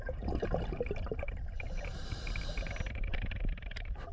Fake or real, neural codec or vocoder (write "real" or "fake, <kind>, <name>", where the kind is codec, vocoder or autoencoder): fake, vocoder, BigVGAN v2